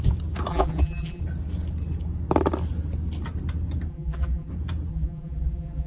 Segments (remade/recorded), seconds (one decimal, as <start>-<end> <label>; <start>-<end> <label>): 0.0-0.5 recorded; 0.5-1.2 remade; 1.2-3.9 recorded; 3.9-4.5 remade; 4.5-4.9 recorded; 4.9-5.9 remade